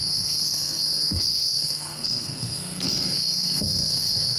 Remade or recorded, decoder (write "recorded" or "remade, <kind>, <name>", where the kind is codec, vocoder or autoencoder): remade, codec, SNAC